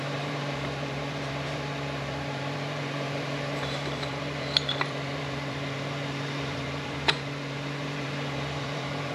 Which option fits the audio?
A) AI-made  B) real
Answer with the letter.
A